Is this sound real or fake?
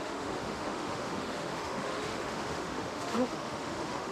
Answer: fake